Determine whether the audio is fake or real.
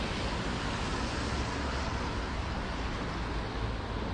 real